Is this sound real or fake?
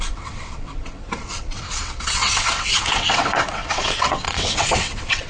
fake